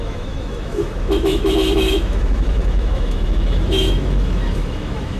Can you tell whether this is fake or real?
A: fake